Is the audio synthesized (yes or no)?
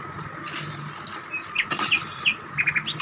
no